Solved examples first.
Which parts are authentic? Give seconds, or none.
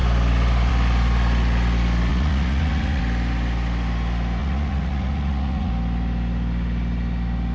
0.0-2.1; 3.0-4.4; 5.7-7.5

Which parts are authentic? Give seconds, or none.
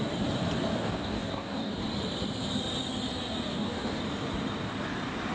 0.0-0.7; 1.7-3.5; 4.0-5.3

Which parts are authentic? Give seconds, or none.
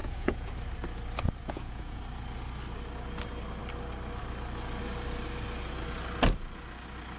0.5-1.4; 2.0-7.2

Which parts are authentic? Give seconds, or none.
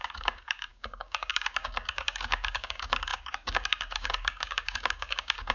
none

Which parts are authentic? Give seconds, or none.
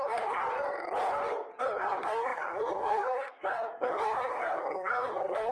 0.4-1.6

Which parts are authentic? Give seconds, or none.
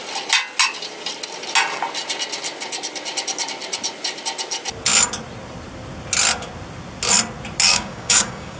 0.0-7.7